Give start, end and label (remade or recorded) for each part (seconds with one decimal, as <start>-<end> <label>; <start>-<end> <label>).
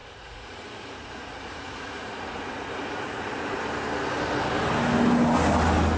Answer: 0.0-3.6 remade; 3.6-6.0 recorded